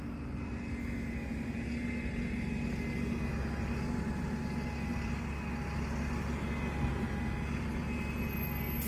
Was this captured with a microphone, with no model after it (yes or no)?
yes